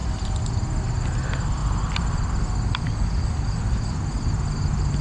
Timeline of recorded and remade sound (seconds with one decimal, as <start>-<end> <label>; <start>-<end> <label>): 0.0-1.6 recorded; 1.6-2.4 remade; 2.4-5.0 recorded